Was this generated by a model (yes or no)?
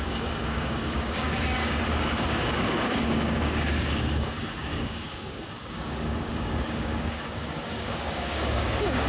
yes